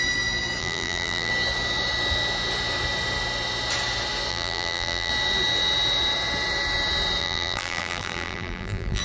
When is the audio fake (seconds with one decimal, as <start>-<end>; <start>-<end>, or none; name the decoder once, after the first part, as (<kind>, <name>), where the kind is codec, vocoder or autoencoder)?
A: 0.6-1.3 (vocoder, BigVGAN v2); 4.3-5.1; 7.2-9.0